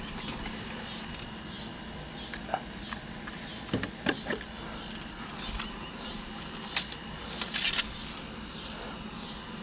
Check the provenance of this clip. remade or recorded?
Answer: recorded